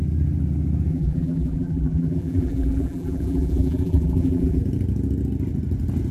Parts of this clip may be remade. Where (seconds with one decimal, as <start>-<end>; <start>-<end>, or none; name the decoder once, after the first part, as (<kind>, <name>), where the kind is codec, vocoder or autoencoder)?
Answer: 0.9-4.6 (vocoder, BigVGAN v2)